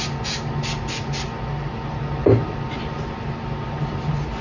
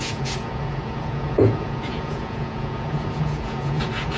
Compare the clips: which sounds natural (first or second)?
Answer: first